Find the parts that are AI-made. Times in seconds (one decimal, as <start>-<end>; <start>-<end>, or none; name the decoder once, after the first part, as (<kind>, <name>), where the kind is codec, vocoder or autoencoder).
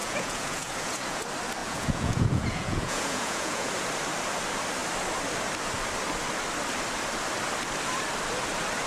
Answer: 0.0-1.2 (vocoder, Vocos); 1.6-3.7